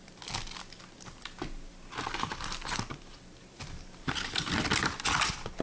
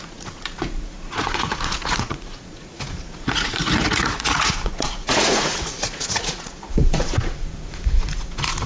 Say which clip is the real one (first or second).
first